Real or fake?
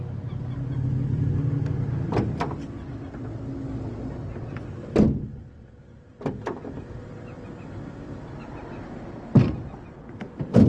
real